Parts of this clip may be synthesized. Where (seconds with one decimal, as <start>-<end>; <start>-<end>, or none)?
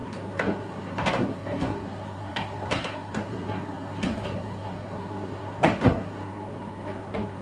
0.0-7.4